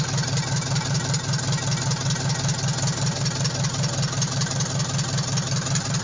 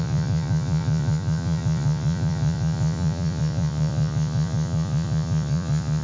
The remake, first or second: second